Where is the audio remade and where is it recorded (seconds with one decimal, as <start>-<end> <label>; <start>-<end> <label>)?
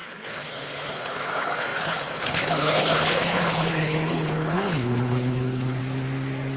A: 0.0-5.8 remade; 5.8-6.6 recorded